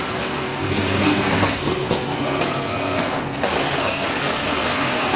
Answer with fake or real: fake